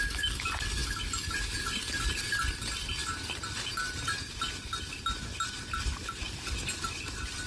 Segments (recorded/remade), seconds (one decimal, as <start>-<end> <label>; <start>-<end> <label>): 0.0-7.5 recorded